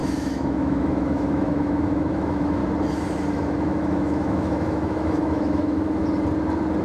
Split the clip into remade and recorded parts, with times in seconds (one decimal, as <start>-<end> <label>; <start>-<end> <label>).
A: 0.0-2.6 remade; 2.6-3.3 recorded; 3.3-6.0 remade; 6.0-6.8 recorded